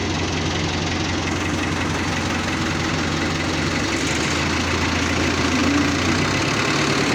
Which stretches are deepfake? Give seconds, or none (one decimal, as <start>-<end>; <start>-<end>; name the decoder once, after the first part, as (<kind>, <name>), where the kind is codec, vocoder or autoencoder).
none